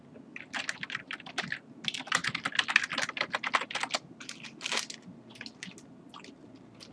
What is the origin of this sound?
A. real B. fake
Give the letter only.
A